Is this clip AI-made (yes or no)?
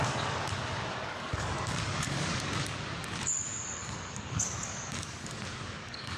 yes